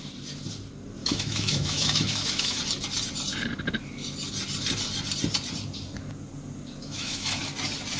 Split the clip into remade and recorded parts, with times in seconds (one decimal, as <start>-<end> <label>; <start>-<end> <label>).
0.0-1.0 recorded; 1.0-2.6 remade; 2.6-6.8 recorded; 6.8-7.4 remade; 7.4-8.0 recorded